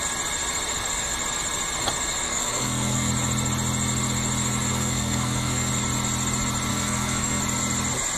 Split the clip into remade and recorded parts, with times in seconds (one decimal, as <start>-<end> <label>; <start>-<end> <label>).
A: 0.0-2.3 recorded; 2.3-3.1 remade; 3.1-4.7 recorded; 4.7-5.7 remade; 5.7-6.7 recorded; 6.7-7.4 remade; 7.4-8.2 recorded